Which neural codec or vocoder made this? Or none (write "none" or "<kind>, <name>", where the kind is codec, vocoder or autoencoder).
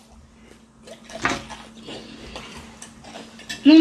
none